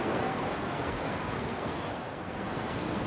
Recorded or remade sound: remade